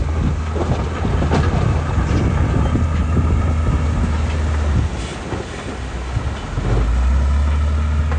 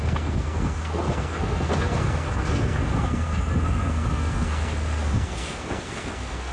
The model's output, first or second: second